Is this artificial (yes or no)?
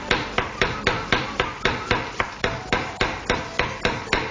no